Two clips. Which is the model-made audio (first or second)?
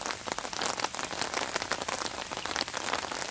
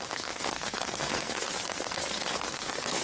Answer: second